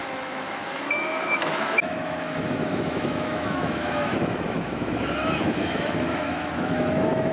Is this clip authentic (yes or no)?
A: no